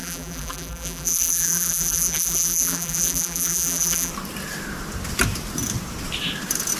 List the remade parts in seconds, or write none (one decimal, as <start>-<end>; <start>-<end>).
0.0-4.1